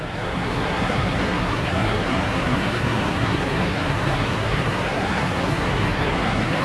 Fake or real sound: fake